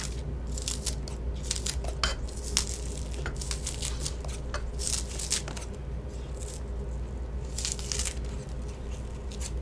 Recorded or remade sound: recorded